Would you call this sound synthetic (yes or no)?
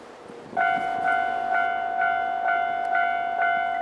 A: no